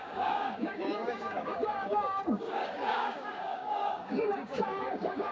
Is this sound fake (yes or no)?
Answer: yes